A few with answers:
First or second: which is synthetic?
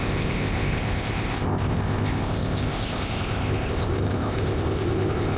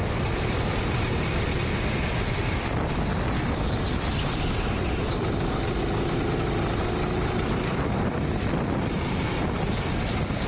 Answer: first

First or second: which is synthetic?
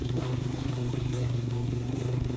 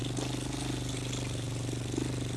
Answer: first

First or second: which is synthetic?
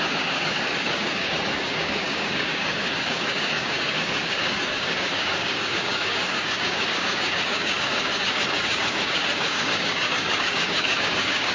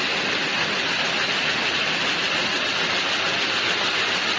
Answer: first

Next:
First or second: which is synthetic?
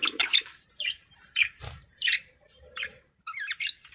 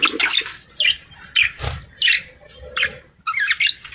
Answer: first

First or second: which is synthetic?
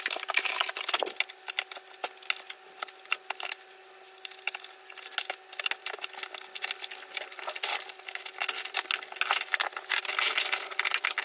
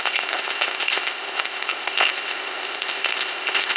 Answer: second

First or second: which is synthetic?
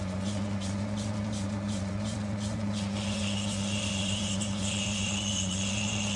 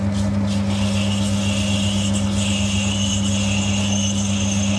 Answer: first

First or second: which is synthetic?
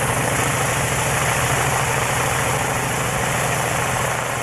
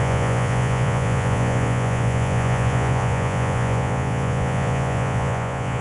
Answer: second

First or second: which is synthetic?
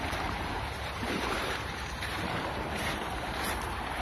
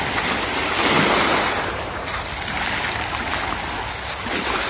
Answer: first